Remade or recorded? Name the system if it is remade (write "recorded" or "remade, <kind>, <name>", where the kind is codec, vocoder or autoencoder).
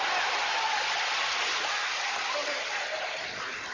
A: recorded